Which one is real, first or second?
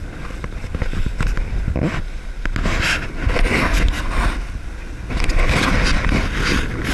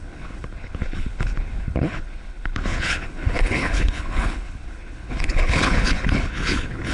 first